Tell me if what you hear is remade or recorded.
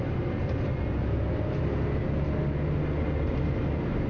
recorded